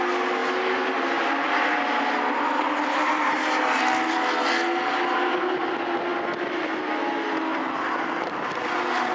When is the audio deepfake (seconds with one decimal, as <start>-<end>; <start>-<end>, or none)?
none